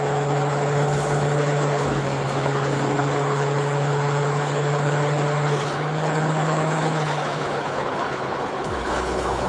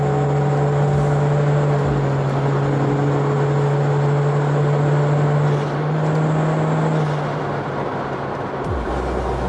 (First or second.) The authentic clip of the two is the second